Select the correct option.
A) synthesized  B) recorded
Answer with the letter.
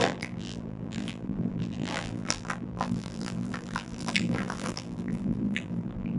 A